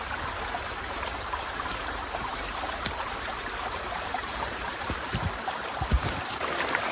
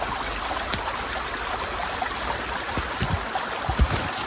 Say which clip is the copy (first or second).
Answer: first